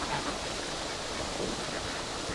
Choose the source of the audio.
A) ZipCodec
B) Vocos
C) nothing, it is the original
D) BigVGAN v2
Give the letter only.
C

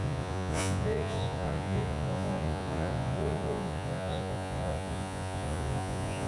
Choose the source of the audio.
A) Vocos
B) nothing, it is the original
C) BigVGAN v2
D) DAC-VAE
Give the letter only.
A